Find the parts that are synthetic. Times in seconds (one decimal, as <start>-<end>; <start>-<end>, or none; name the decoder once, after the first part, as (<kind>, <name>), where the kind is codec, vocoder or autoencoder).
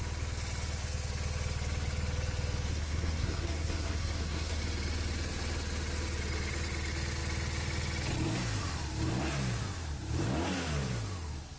2.7-4.6 (codec, SNAC)